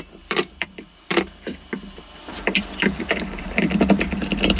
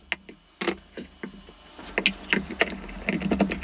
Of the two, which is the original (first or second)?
second